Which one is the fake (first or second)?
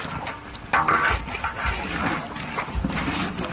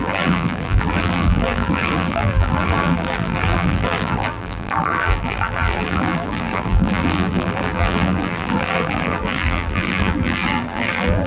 second